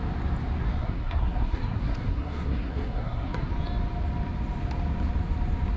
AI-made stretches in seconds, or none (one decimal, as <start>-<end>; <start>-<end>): 0.8-3.5